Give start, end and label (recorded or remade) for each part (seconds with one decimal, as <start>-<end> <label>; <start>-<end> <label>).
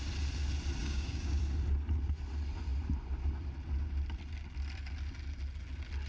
0.0-0.8 recorded; 0.8-1.4 remade; 1.4-6.1 recorded